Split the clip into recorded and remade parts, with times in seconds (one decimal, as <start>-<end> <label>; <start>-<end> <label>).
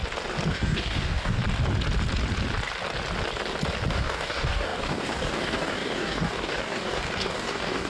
0.0-0.5 recorded; 0.5-1.4 remade; 1.4-3.9 recorded; 3.9-7.9 remade